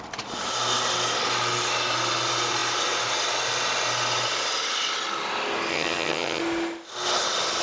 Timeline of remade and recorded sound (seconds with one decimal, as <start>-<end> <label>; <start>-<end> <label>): 0.0-5.7 recorded; 5.7-6.4 remade; 6.4-7.6 recorded